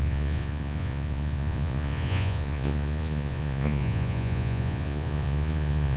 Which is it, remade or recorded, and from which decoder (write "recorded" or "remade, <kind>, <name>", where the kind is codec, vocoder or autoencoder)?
remade, vocoder, Vocos